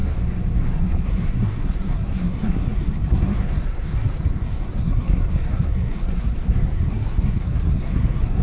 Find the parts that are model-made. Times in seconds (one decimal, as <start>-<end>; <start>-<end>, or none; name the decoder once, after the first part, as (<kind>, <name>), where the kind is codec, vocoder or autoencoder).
0.7-8.4 (codec, SNAC)

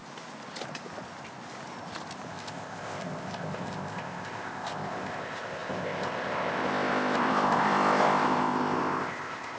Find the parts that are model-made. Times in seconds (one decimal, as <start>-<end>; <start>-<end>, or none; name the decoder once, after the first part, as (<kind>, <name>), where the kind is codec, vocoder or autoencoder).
2.3-9.6 (codec, ZipCodec)

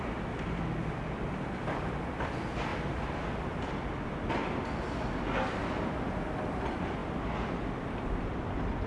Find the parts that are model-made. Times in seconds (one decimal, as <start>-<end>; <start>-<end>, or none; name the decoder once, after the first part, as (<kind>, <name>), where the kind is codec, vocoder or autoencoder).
none